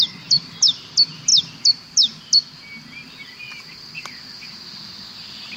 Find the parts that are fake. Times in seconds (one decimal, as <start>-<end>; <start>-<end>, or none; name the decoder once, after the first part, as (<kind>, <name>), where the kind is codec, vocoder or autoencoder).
none